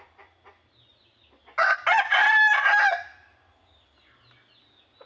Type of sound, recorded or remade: recorded